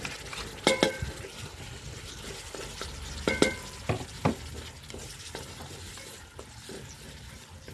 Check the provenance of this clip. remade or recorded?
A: recorded